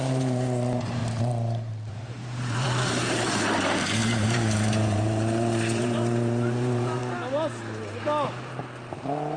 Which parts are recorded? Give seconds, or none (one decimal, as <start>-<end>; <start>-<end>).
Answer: 1.0-1.9; 7.0-8.9